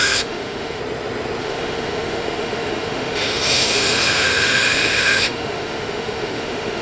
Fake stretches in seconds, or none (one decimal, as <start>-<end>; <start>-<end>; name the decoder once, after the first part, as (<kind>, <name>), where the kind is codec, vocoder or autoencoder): 0.0-0.8 (autoencoder, DAC-VAE); 1.4-6.8